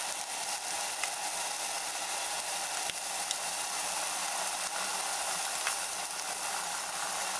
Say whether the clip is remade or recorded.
recorded